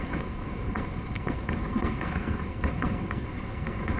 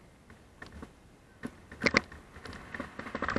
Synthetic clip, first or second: first